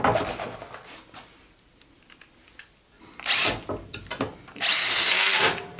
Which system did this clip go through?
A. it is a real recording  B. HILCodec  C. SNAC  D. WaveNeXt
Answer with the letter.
A